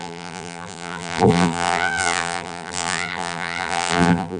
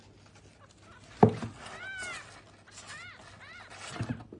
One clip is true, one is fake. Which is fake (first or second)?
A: first